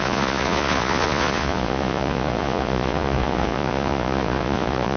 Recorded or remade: remade